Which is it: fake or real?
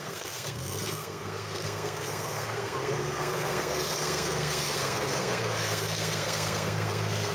fake